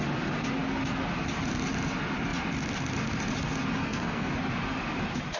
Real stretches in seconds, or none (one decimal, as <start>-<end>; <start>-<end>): 0.0-3.8; 4.3-5.4